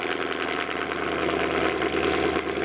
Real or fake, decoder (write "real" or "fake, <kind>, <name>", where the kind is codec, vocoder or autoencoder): real